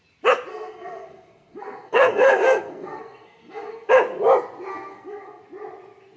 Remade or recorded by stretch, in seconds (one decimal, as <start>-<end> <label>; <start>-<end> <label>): 0.0-0.5 recorded; 0.5-3.9 remade; 3.9-4.7 recorded; 4.7-5.4 remade; 5.4-6.2 recorded